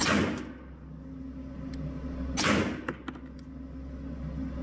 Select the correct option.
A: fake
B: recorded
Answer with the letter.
B